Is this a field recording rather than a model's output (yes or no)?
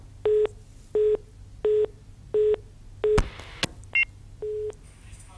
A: yes